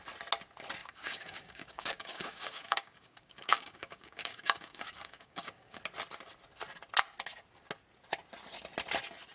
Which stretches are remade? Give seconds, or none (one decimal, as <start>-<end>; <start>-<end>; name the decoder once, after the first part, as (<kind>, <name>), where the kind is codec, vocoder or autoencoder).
0.8-5.8 (codec, DAC)